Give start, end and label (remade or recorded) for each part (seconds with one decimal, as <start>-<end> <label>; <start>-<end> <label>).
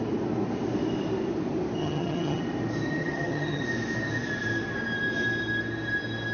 0.0-1.8 recorded; 1.8-2.4 remade; 2.4-3.0 recorded; 3.0-3.6 remade; 3.6-6.3 recorded